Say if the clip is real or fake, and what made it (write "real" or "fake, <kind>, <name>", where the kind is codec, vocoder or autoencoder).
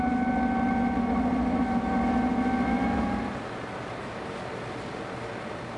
real